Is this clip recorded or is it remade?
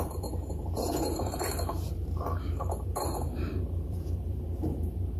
remade